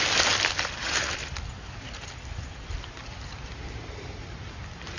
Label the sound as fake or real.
real